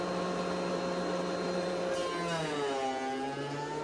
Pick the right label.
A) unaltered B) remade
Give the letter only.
A